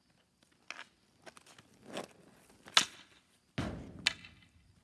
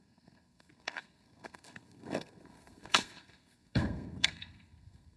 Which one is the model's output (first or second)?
second